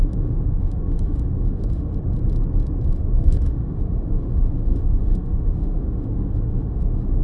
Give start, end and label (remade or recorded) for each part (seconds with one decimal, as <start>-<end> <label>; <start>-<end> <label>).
0.0-1.9 remade; 1.9-2.9 recorded; 2.9-7.2 remade